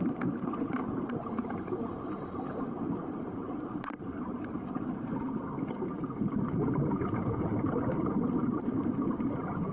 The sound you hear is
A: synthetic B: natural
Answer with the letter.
A